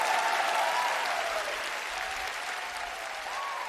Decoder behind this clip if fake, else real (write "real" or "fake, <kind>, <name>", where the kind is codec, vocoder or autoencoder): fake, vocoder, BigVGAN v2